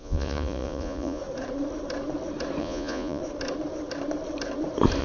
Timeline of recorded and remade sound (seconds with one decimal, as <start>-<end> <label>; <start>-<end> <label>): 0.0-1.2 remade; 1.2-2.6 recorded; 2.6-3.2 remade; 3.2-5.0 recorded